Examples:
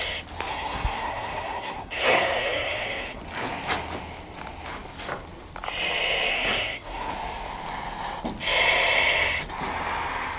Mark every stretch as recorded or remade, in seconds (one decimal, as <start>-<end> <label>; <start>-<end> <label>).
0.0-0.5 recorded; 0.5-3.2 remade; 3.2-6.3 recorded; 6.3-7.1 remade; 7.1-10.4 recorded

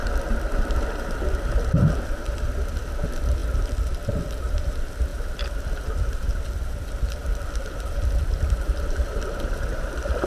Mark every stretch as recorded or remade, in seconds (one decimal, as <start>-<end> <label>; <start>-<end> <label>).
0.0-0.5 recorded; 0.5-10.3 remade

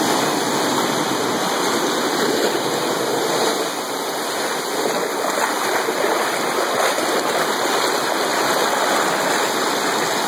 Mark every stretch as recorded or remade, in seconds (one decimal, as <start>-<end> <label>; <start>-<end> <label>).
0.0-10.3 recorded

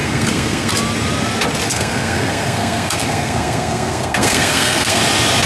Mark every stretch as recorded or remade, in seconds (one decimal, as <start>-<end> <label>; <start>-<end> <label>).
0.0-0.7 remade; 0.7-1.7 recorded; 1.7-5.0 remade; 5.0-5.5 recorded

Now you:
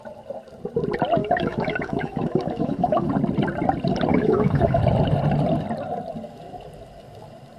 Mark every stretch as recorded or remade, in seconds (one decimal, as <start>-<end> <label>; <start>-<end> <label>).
0.0-1.2 recorded; 1.2-3.1 remade; 3.1-4.1 recorded; 4.1-4.8 remade; 4.8-7.6 recorded

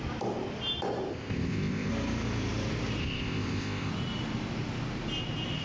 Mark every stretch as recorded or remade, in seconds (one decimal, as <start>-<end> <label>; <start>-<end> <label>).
0.0-1.1 recorded; 1.1-1.9 remade; 1.9-3.0 recorded; 3.0-3.9 remade; 3.9-5.6 recorded

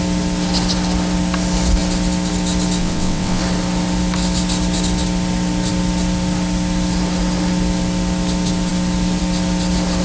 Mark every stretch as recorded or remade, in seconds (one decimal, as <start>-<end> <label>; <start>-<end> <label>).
0.0-2.8 recorded; 2.8-3.4 remade; 3.4-10.0 recorded